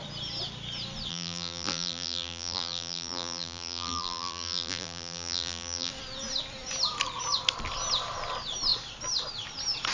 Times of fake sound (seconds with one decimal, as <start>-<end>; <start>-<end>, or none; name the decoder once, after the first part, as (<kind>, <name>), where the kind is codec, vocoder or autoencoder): 1.1-5.9 (vocoder, BigVGAN v2)